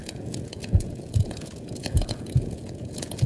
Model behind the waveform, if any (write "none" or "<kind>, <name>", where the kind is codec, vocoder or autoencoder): vocoder, Vocos